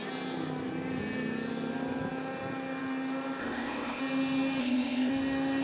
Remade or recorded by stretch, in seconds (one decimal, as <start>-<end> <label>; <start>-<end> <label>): 0.0-3.4 recorded; 3.4-4.0 remade; 4.0-4.6 recorded; 4.6-5.1 remade; 5.1-5.6 recorded